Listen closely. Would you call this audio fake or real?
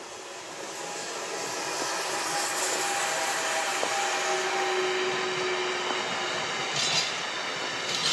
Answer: real